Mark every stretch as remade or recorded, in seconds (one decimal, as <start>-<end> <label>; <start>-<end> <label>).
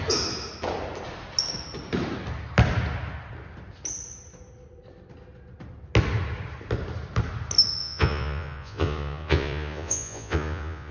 0.0-7.8 recorded; 7.8-10.9 remade